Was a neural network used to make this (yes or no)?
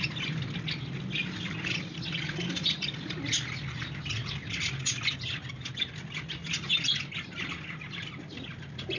no